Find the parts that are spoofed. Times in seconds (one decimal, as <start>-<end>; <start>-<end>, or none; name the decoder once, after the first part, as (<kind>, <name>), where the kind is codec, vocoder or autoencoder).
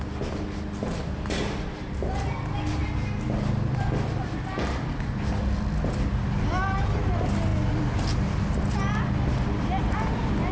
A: none